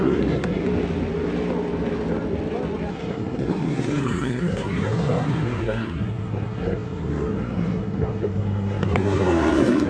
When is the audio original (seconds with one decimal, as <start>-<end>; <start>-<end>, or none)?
0.6-2.9